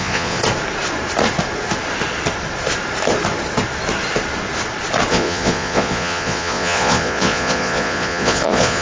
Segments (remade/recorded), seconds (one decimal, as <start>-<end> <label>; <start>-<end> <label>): 0.0-0.4 remade; 0.4-5.1 recorded; 5.1-8.8 remade